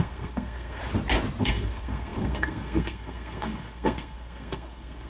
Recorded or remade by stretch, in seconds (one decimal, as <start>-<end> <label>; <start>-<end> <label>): 0.0-0.8 remade; 0.8-1.4 recorded; 1.4-5.1 remade